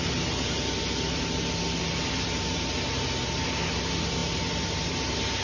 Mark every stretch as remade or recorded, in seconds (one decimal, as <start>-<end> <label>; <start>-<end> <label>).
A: 0.0-5.4 recorded